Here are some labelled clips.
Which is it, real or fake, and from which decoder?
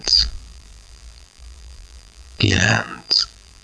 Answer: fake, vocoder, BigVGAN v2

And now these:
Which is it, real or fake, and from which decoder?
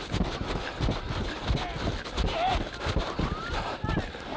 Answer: fake, vocoder, BigVGAN v2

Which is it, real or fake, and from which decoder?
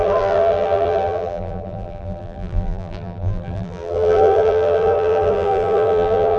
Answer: fake, vocoder, BigVGAN v2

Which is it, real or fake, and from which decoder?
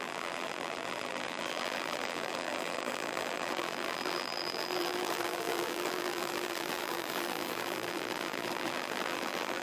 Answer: fake, vocoder, BigVGAN v2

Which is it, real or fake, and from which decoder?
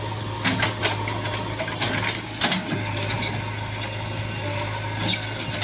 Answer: real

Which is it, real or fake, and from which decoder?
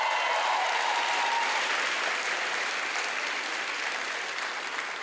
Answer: fake, vocoder, BigVGAN v2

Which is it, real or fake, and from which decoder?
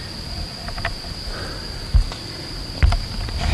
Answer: real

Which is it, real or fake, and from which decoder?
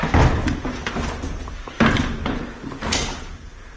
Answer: real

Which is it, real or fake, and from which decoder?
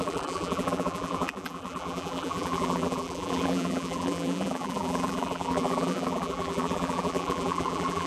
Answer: fake, vocoder, BigVGAN v2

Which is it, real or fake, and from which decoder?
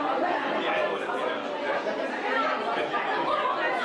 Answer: real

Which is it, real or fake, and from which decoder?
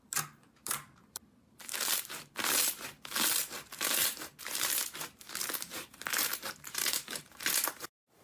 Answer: fake, vocoder, BigVGAN v2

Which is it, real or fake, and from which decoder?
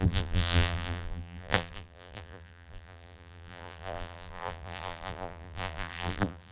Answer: fake, vocoder, BigVGAN v2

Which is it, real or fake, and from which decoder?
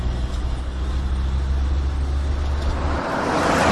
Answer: real